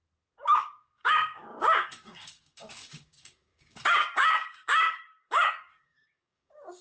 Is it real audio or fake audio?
fake